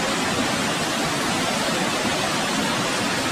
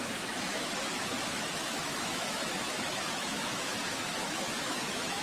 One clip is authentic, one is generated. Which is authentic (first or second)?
first